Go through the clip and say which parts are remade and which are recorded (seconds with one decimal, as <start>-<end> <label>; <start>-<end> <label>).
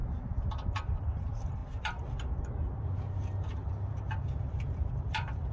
0.0-1.0 recorded; 1.0-1.6 remade; 1.6-4.9 recorded; 4.9-5.5 remade